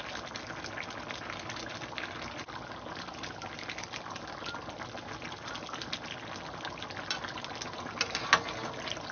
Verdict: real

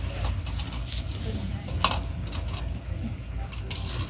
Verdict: real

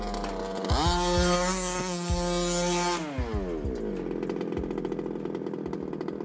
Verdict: real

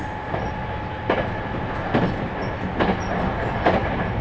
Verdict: real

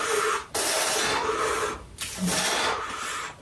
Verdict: real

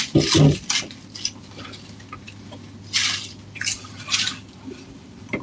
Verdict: real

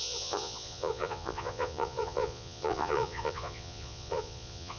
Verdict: fake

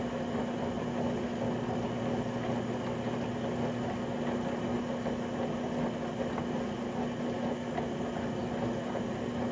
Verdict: real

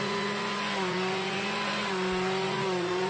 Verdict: fake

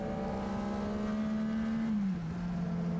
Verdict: real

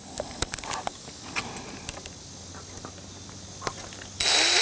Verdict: real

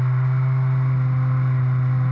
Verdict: real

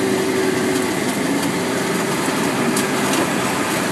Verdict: real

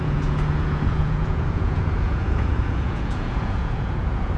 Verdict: fake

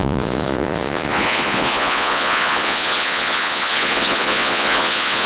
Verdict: fake